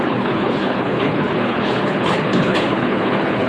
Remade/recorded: remade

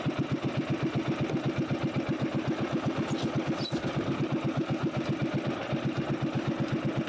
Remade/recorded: recorded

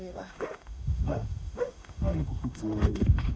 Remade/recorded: remade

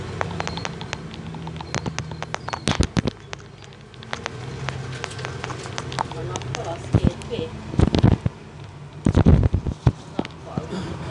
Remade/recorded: recorded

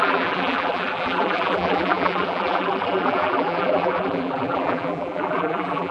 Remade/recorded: remade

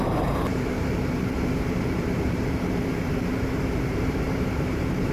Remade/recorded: remade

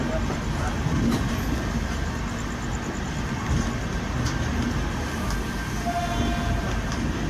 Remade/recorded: recorded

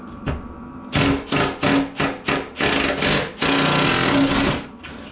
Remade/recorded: recorded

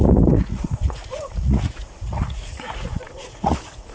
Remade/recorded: remade